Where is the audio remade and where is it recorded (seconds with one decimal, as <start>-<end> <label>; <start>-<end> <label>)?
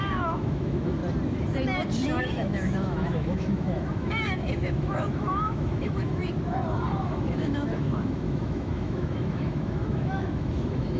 0.0-1.0 remade; 1.0-2.2 recorded; 2.2-6.2 remade; 6.2-7.0 recorded; 7.0-11.0 remade